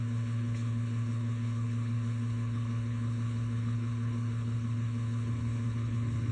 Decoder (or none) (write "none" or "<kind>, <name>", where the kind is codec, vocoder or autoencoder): codec, HILCodec